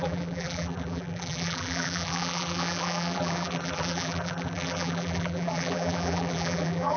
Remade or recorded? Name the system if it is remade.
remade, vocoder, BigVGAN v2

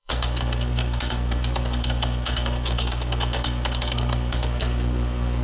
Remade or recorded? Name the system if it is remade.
remade, codec, SNAC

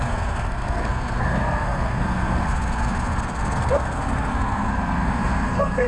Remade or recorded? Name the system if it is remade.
remade, codec, SNAC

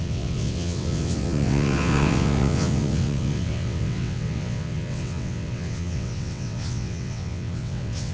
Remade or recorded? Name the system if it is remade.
remade, vocoder, WaveNeXt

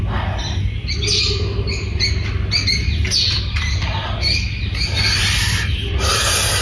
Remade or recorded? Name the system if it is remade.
recorded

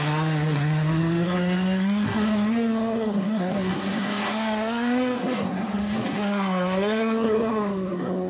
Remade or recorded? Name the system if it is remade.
remade, codec, SNAC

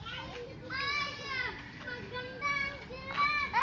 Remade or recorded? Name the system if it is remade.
recorded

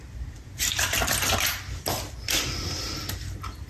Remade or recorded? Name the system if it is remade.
recorded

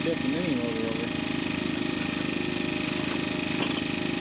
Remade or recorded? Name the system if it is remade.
recorded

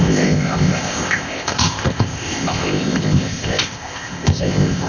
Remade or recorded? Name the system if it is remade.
remade, codec, ZipCodec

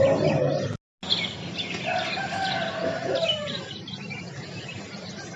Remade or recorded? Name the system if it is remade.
recorded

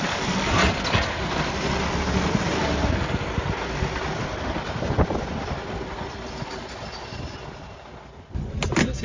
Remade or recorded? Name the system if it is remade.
recorded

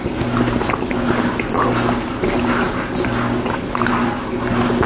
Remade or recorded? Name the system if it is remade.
recorded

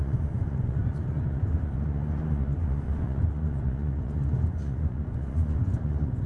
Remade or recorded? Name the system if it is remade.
remade, vocoder, Vocos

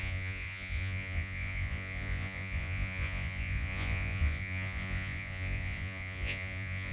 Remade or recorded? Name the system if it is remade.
remade, vocoder, Vocos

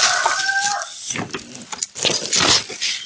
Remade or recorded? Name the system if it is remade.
remade, vocoder, BigVGAN v2